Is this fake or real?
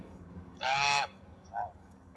fake